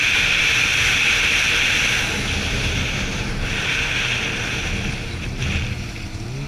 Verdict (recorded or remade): recorded